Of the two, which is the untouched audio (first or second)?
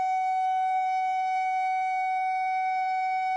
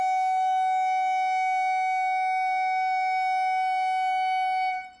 second